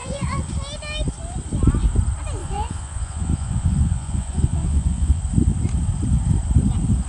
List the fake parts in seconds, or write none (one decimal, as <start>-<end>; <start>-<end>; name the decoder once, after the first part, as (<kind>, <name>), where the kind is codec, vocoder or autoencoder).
0.0-0.5 (vocoder, Vocos); 2.4-5.2